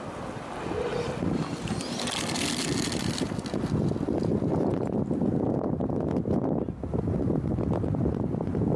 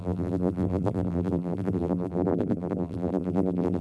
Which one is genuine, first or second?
first